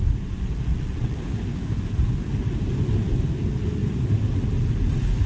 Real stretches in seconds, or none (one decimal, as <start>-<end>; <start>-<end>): 0.0-0.7; 1.2-5.3

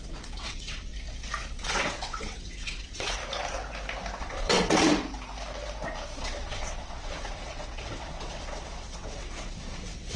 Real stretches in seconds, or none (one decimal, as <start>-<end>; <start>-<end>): 0.9-1.6; 3.2-4.2; 4.9-6.2